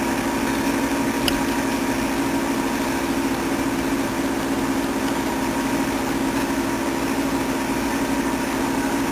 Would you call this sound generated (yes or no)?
no